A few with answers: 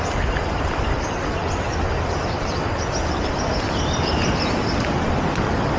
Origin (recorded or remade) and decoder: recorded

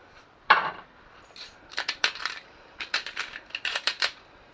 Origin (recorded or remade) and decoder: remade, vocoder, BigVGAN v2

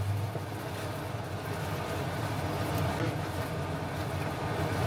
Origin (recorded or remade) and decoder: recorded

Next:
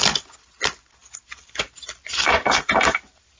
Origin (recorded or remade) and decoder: recorded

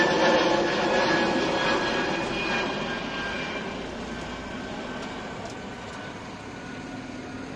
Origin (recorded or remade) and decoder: recorded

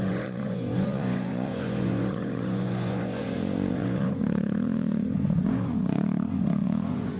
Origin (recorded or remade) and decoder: remade, vocoder, Vocos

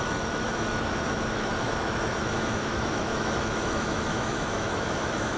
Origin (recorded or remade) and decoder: remade, autoencoder, DAC-VAE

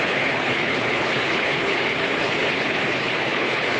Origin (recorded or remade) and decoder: remade, codec, HILCodec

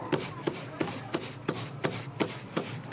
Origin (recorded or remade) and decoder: recorded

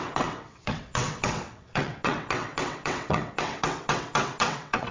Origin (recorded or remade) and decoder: remade, vocoder, WaveNeXt